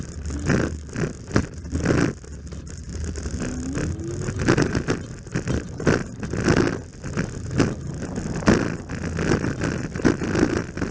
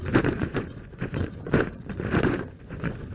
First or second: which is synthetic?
second